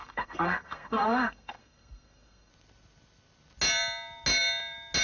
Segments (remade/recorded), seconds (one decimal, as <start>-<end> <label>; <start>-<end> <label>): 0.0-2.5 remade; 2.5-5.0 recorded

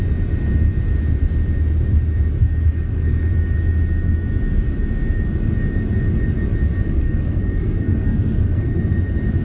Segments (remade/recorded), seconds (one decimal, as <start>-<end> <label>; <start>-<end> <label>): 0.0-2.4 recorded; 2.4-3.3 remade; 3.3-7.0 recorded; 7.0-8.8 remade; 8.8-9.4 recorded

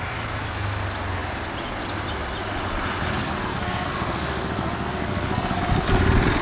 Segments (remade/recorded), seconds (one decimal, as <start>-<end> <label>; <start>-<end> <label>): 0.0-3.2 recorded; 3.2-5.6 remade; 5.6-6.4 recorded

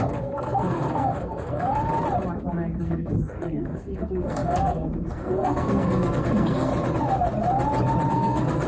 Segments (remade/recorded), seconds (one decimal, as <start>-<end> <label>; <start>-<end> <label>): 0.0-1.9 remade; 1.9-2.8 recorded; 2.8-6.7 remade; 6.7-8.1 recorded; 8.1-8.7 remade

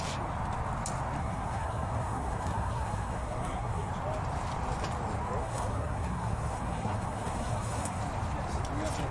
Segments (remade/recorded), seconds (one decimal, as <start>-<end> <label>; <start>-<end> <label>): 0.0-1.2 recorded; 1.2-3.9 remade; 3.9-5.4 recorded; 5.4-8.0 remade; 8.0-9.1 recorded

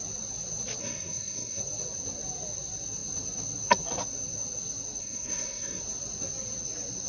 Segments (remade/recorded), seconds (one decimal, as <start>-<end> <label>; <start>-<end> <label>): 0.0-0.8 recorded; 0.8-1.6 remade; 1.6-5.0 recorded; 5.0-5.8 remade; 5.8-7.1 recorded